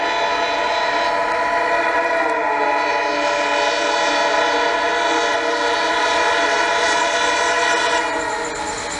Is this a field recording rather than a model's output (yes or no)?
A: yes